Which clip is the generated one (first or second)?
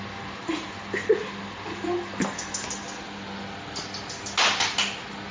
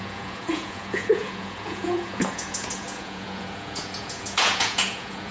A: second